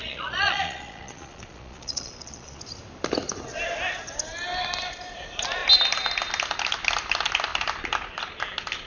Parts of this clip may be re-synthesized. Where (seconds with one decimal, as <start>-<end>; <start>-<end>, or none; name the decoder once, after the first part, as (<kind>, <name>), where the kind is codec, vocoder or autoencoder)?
0.0-2.6 (vocoder, Vocos)